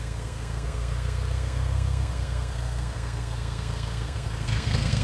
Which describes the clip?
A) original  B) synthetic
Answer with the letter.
B